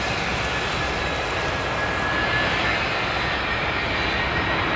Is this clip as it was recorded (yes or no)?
yes